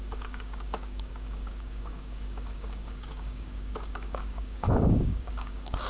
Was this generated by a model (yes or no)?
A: yes